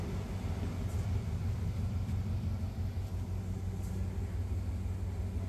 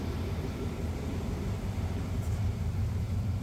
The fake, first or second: second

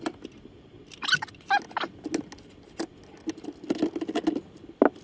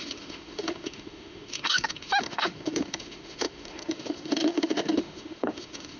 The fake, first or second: second